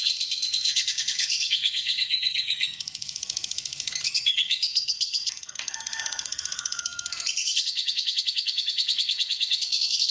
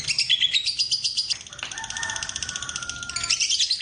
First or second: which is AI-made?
first